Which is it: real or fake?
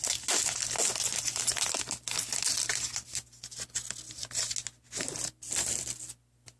real